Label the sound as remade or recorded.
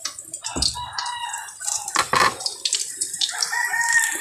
remade